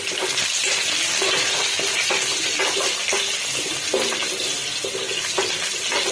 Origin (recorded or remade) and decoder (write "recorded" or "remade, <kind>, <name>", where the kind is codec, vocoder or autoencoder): recorded